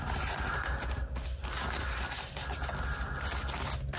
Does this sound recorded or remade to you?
recorded